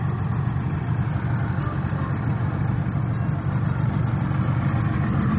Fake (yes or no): no